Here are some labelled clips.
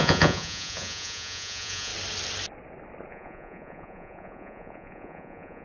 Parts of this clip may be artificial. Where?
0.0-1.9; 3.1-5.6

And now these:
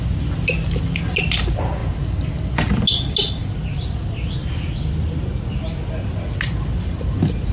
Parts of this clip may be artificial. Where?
none

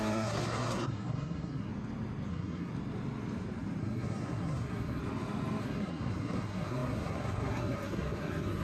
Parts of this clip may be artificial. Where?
0.0-1.7; 2.3-2.7; 3.8-5.0; 5.6-8.6

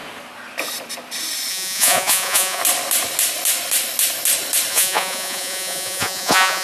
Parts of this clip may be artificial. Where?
1.5-2.6; 4.7-6.6

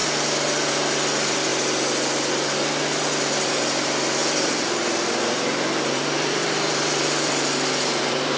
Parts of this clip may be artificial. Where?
0.7-1.5; 2.3-8.4